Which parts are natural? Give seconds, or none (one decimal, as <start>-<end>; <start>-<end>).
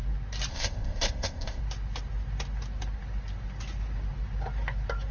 0.0-0.5; 1.6-5.1